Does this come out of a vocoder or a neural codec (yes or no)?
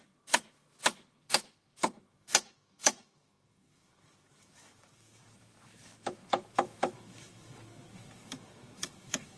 yes